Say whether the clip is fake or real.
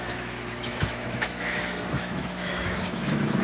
fake